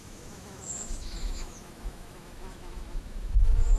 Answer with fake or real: fake